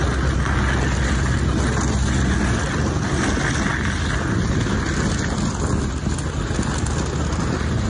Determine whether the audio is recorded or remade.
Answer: recorded